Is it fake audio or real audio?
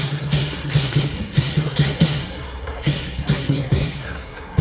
fake